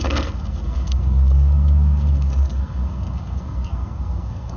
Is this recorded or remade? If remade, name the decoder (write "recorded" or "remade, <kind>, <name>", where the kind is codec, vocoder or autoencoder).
remade, codec, SNAC